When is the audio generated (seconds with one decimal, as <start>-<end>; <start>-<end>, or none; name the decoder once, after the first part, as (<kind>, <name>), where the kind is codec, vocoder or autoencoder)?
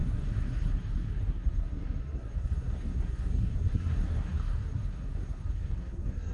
0.0-6.3 (codec, SNAC)